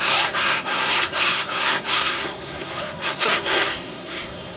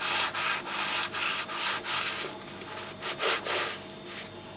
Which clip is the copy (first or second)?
first